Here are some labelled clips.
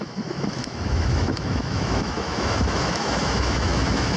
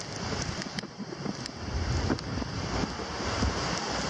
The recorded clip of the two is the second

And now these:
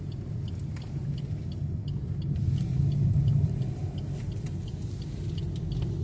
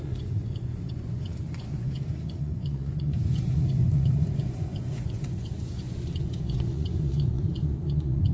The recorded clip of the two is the first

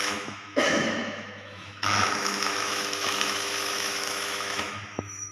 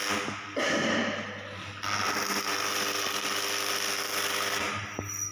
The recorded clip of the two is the second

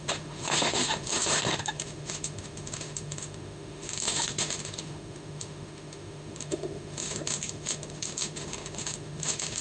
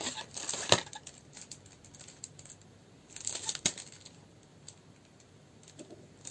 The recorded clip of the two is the second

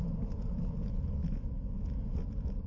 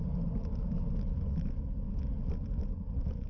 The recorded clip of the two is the second